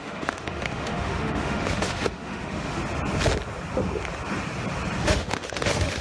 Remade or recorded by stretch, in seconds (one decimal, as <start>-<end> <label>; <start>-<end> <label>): 0.0-2.8 remade; 2.8-5.0 recorded; 5.0-6.0 remade